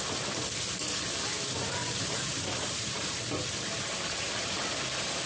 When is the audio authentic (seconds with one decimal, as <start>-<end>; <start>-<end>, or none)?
0.0-1.8; 4.8-5.3